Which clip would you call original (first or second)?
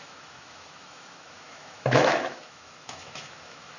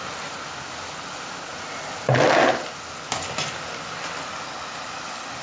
second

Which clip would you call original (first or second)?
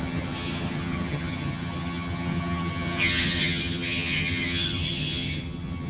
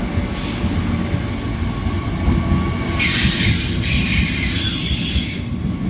second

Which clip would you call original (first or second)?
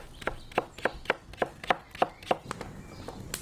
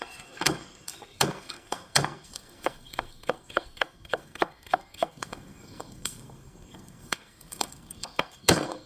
first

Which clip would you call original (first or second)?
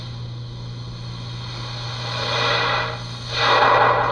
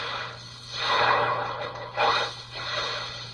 first